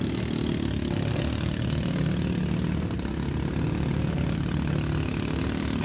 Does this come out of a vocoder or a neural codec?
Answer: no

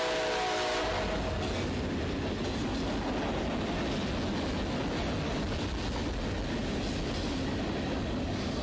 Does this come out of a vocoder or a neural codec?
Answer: no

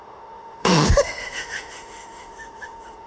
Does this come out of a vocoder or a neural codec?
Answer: yes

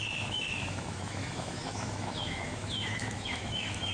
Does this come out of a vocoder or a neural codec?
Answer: yes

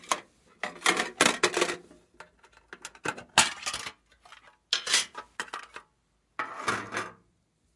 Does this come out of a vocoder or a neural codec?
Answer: no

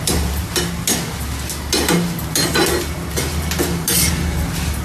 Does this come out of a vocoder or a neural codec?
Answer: no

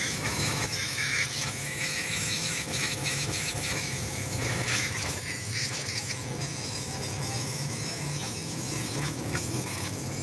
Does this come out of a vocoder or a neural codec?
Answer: yes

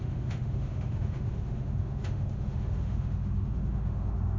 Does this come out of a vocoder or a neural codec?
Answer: yes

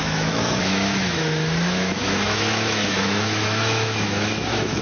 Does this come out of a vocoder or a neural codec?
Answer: yes